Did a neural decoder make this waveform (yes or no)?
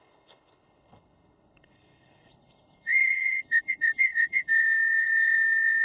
yes